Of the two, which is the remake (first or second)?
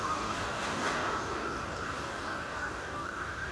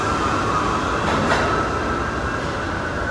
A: first